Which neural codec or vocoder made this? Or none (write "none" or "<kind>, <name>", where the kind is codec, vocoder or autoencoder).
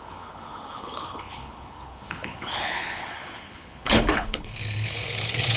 codec, HILCodec